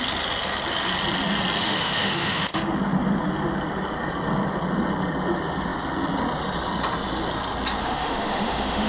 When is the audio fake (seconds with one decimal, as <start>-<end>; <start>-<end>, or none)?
1.6-2.6; 7.8-8.9